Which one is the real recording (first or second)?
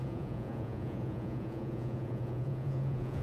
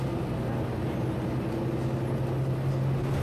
second